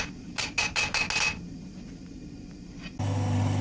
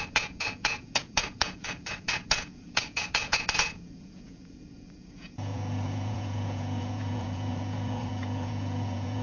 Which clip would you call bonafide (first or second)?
first